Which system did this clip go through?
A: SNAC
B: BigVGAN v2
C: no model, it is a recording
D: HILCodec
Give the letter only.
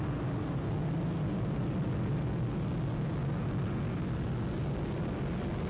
C